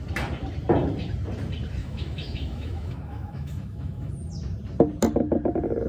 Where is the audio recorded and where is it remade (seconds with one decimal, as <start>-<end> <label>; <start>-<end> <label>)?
0.0-1.8 recorded; 1.8-4.1 remade; 4.1-5.9 recorded